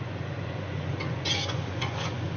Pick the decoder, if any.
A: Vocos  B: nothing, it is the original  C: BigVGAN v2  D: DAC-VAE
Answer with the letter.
A